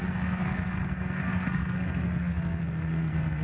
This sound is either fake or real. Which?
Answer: fake